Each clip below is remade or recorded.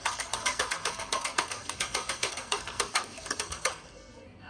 remade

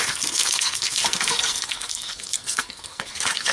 remade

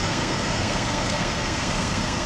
remade